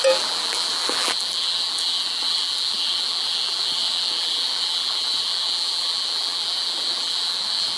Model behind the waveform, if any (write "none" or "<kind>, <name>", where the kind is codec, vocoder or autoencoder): vocoder, BigVGAN v2